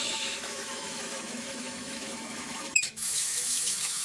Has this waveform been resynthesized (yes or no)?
yes